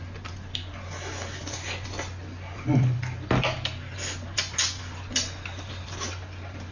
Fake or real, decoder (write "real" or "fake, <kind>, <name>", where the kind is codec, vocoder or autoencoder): real